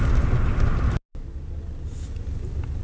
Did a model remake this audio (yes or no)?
no